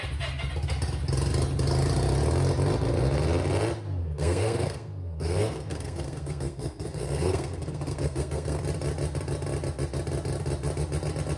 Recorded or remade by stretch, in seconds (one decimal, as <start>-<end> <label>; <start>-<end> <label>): 0.0-4.0 recorded; 4.0-8.6 remade; 8.6-11.4 recorded

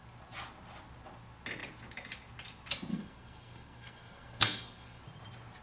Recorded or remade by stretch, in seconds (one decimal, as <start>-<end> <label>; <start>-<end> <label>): 0.0-2.9 recorded; 2.9-5.0 remade; 5.0-5.6 recorded

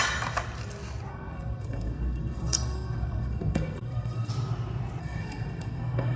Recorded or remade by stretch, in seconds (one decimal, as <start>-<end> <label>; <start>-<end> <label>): 0.0-1.1 recorded; 1.1-4.3 remade; 4.3-5.0 recorded; 5.0-6.2 remade

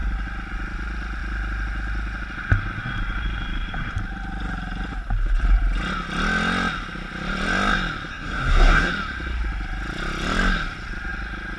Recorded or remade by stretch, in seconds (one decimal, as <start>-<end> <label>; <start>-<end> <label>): 0.0-8.1 recorded; 8.1-8.9 remade; 8.9-11.6 recorded